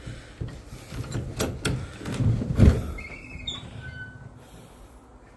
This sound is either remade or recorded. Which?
recorded